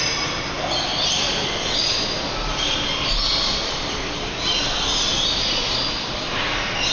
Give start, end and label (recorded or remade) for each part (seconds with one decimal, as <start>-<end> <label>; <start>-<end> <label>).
0.0-6.9 recorded